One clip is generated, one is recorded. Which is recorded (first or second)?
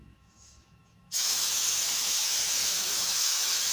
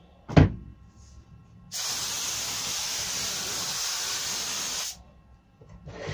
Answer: second